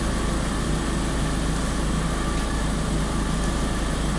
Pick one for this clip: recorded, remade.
recorded